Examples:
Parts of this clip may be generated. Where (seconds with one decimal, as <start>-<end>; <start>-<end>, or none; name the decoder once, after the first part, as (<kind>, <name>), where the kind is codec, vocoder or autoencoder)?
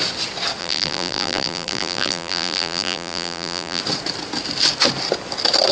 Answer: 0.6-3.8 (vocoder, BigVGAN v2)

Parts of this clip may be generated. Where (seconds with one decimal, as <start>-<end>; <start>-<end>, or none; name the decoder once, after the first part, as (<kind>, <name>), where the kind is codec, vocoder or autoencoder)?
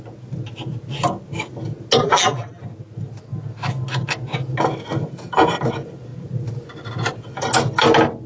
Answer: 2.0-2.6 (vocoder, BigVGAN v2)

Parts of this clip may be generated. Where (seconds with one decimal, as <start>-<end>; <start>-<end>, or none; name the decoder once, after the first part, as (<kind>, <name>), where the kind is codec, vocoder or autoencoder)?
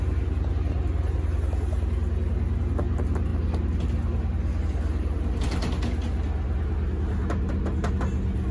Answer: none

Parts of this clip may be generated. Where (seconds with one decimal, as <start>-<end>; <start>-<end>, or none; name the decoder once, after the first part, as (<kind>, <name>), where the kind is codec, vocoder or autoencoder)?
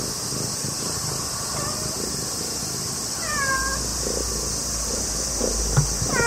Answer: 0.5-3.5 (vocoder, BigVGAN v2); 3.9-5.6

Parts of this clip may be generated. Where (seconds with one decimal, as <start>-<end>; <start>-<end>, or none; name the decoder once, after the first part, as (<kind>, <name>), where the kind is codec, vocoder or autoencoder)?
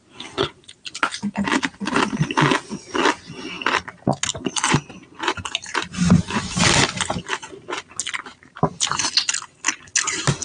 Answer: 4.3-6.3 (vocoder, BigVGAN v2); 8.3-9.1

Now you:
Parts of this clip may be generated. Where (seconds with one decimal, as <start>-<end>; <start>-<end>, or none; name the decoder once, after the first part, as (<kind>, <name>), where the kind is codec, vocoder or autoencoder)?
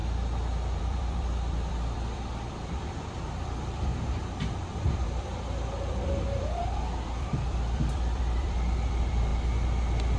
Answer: 0.8-3.9 (vocoder, BigVGAN v2); 4.8-5.3; 5.9-9.3